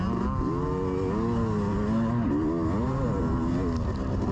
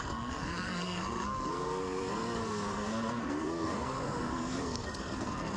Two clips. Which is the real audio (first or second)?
first